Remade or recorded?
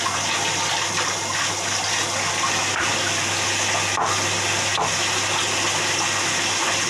recorded